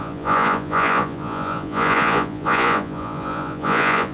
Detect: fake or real fake